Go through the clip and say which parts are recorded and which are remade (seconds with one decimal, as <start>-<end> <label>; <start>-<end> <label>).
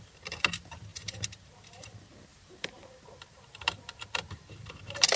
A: 0.0-0.9 recorded; 0.9-1.7 remade; 1.7-2.3 recorded; 2.3-5.2 remade